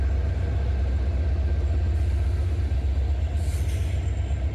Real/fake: real